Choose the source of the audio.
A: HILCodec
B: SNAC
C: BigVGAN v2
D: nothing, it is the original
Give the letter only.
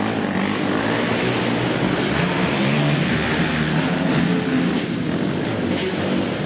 D